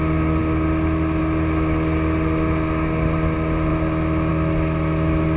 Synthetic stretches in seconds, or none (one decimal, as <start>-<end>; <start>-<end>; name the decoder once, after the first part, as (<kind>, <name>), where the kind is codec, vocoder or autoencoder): none